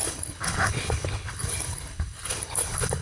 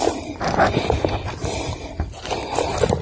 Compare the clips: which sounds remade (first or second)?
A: first